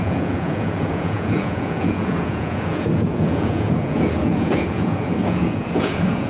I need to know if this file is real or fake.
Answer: fake